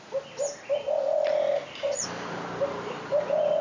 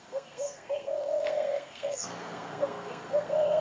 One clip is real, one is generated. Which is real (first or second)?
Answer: first